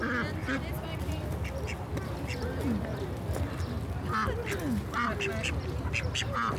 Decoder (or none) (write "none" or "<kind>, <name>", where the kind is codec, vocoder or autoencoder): none